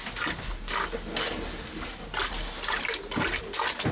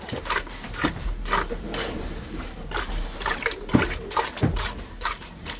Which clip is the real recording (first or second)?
first